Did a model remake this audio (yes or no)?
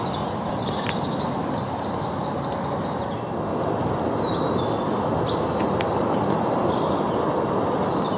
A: no